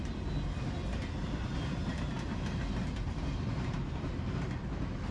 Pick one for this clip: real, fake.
real